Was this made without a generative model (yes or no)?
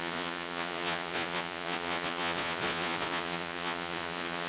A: no